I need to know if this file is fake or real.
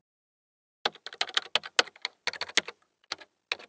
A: real